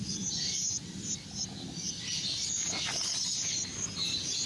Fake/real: real